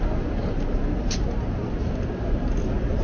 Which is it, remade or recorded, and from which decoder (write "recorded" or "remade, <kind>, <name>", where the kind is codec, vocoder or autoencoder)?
recorded